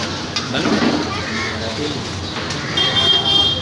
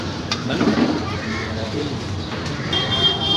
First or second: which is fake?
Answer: second